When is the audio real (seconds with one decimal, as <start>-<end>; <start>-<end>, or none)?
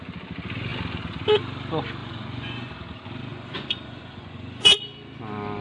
0.0-2.0; 2.7-3.3; 4.8-5.6